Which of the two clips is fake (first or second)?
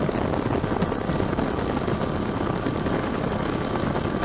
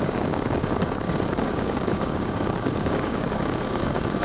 second